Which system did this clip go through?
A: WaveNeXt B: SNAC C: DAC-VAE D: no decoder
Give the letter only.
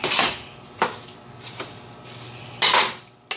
D